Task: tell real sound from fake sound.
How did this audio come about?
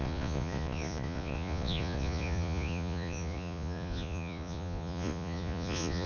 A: fake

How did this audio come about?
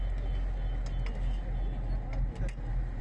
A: real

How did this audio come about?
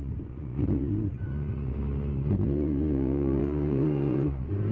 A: fake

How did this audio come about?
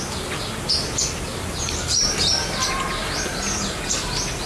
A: real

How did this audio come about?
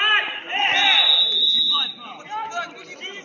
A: real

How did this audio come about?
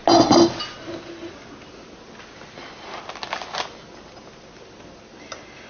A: real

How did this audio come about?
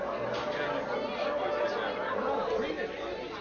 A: real